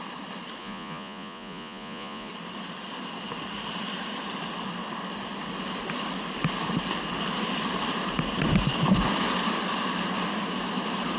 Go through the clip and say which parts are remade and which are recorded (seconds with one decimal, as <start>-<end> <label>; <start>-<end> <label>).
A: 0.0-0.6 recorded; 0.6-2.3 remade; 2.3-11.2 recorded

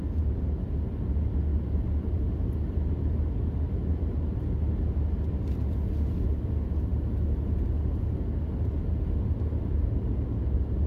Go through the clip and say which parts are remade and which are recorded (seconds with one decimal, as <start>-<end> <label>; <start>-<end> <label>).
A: 0.0-10.9 recorded

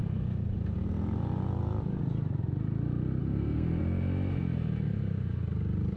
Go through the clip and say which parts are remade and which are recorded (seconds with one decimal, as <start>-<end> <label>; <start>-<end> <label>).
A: 0.0-3.2 recorded; 3.2-3.8 remade; 3.8-6.0 recorded

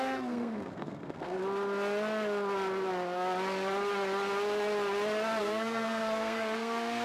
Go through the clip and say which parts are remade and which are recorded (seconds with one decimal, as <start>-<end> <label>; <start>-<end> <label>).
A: 0.0-1.4 remade; 1.4-5.4 recorded; 5.4-7.0 remade

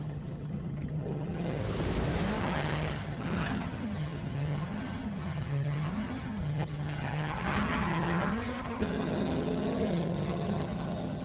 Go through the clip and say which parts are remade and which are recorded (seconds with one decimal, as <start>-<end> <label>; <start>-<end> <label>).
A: 0.0-1.6 remade; 1.6-2.4 recorded; 2.4-11.2 remade